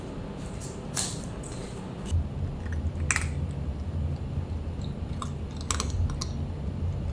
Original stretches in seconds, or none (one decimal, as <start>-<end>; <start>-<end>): 0.0-7.1